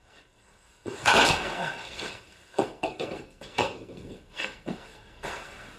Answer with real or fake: fake